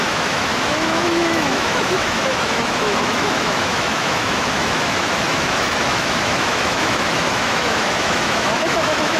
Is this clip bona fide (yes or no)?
no